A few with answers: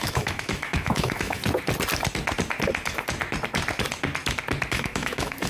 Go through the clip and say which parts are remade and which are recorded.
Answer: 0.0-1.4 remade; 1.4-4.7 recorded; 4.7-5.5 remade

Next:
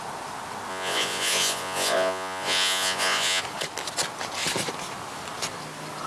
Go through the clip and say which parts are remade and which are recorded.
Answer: 0.0-0.7 recorded; 0.7-3.4 remade; 3.4-6.1 recorded

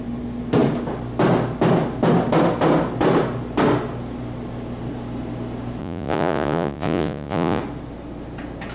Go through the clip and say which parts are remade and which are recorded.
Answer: 0.0-5.8 recorded; 5.8-7.6 remade; 7.6-8.7 recorded

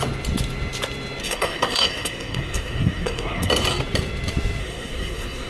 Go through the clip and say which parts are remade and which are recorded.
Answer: 0.0-1.2 recorded; 1.2-3.5 remade; 3.5-4.6 recorded; 4.6-5.5 remade

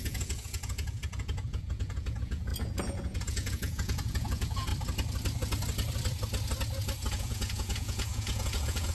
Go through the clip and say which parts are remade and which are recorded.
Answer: 0.0-4.7 remade; 4.7-7.1 recorded; 7.1-8.9 remade

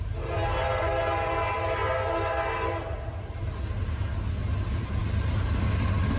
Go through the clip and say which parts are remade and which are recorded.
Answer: 0.0-6.2 recorded

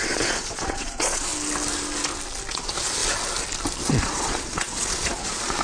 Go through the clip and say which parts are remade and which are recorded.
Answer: 0.0-1.3 remade; 1.3-2.5 recorded; 2.5-3.0 remade; 3.0-3.9 recorded; 3.9-5.6 remade